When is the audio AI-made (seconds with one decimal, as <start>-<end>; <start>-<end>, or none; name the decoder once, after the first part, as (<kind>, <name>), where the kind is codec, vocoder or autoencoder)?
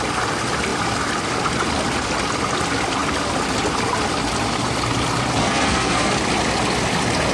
5.4-6.1 (codec, SNAC)